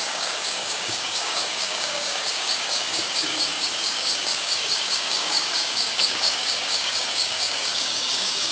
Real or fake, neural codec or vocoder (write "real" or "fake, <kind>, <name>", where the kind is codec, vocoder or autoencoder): fake, codec, DAC